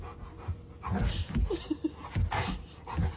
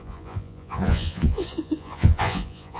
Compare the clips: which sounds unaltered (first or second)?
first